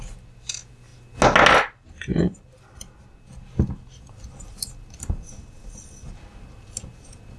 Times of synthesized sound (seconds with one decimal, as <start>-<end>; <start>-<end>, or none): none